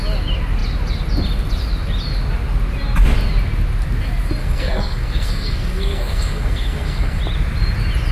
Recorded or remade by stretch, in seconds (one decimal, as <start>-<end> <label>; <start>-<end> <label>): 0.0-4.4 recorded; 4.4-7.2 remade; 7.2-8.1 recorded